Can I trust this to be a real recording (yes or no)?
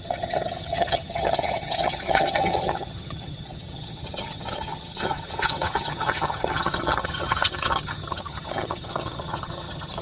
no